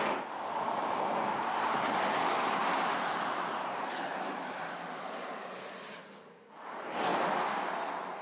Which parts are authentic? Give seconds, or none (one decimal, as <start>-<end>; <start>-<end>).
0.0-0.8; 2.2-2.6; 5.0-8.2